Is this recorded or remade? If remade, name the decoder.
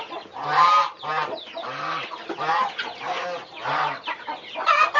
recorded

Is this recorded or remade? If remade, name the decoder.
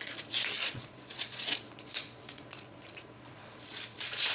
remade, vocoder, Vocos